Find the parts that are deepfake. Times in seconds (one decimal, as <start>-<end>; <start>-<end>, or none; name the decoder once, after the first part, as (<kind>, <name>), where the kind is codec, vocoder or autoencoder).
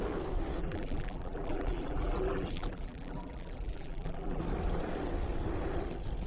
0.6-4.4 (vocoder, BigVGAN v2)